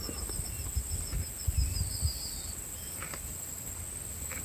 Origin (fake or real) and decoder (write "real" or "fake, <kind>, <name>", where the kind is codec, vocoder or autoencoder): real